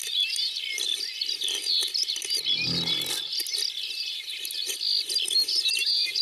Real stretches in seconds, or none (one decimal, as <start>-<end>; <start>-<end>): 0.0-5.4